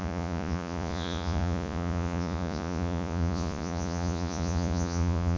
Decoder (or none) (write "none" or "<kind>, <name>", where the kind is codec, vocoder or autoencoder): vocoder, Vocos